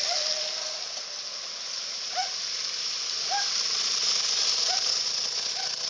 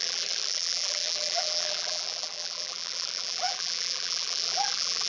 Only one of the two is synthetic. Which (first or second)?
second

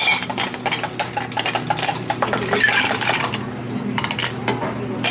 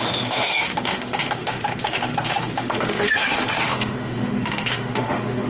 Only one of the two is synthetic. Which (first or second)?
second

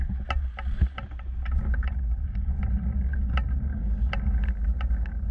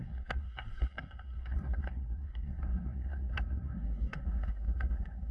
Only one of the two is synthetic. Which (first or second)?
second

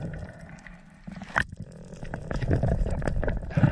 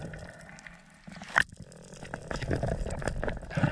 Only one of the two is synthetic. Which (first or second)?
first